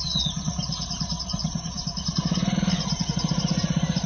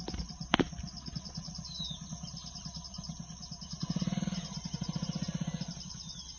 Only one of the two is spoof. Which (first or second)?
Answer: first